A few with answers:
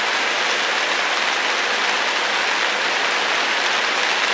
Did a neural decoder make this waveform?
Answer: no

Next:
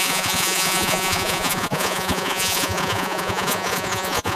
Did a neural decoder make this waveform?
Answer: yes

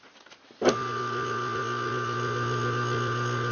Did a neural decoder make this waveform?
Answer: no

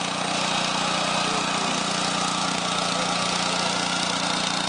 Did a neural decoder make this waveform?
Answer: no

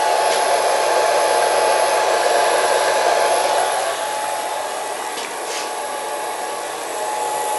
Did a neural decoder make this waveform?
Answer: no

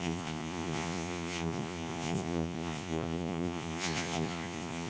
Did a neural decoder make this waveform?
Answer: yes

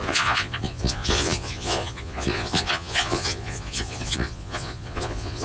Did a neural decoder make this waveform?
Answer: yes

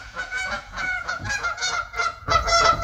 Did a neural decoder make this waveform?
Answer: yes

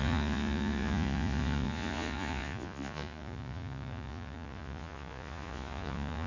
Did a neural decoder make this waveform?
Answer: yes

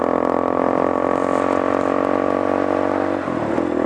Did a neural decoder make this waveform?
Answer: no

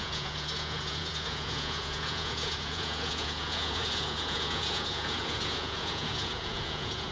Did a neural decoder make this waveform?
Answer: yes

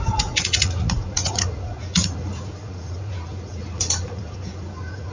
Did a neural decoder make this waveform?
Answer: yes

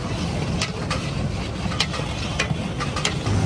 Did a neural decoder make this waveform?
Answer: no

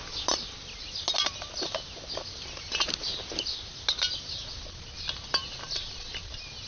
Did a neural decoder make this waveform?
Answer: no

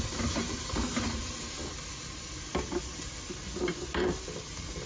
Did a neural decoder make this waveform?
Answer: no